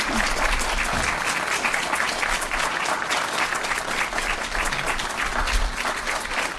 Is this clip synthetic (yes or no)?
no